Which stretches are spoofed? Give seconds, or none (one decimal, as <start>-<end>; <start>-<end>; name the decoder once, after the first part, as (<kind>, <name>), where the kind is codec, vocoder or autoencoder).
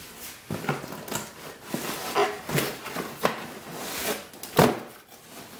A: none